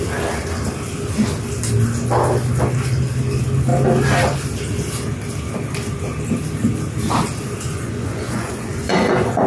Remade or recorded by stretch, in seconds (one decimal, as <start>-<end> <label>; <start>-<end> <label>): 0.0-7.7 recorded; 7.7-9.5 remade